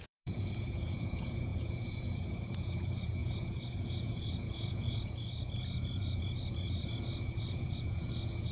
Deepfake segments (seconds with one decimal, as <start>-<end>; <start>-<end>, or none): 0.0-8.5